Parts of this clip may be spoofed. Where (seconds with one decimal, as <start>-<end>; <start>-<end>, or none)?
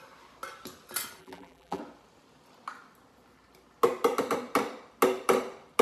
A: 1.2-1.8